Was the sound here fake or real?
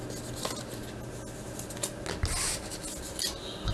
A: real